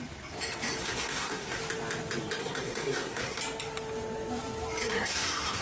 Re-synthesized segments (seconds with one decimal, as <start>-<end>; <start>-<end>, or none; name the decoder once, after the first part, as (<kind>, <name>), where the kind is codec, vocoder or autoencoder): 0.8-1.6 (codec, SNAC); 2.4-3.4; 4.8-5.6

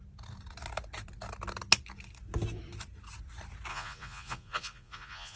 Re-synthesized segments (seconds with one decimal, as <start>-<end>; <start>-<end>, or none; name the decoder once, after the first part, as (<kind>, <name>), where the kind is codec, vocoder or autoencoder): 3.7-5.4 (vocoder, Vocos)

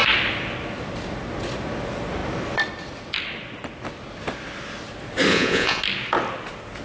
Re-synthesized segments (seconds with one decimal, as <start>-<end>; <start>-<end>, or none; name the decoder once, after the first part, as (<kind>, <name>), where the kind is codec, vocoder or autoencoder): 5.3-5.8 (vocoder, Vocos)